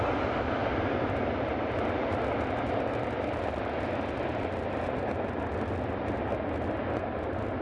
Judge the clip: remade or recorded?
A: recorded